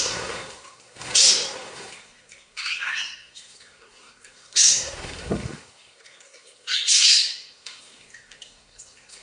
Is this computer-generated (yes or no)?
yes